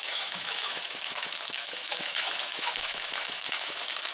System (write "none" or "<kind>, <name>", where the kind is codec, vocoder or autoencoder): autoencoder, DAC-VAE